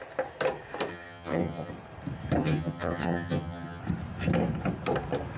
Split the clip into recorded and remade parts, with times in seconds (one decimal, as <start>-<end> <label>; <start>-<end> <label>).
0.0-0.9 recorded; 0.9-1.7 remade; 1.7-2.4 recorded; 2.4-3.8 remade; 3.8-5.4 recorded